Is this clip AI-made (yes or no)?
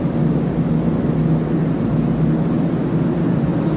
no